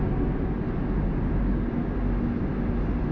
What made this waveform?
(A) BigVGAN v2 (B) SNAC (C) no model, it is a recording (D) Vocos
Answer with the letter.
C